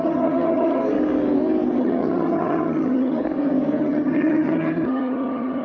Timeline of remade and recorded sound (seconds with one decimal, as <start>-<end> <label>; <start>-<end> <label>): 0.0-0.8 remade; 0.8-1.8 recorded; 1.8-3.2 remade; 3.2-3.8 recorded; 3.8-5.6 remade